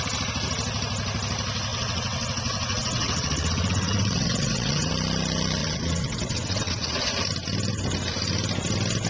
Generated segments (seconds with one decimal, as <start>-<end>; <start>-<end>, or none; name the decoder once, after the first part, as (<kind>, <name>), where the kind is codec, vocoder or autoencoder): 1.7-4.9 (vocoder, WaveNeXt); 5.6-7.1